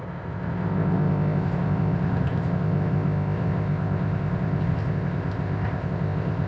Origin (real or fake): fake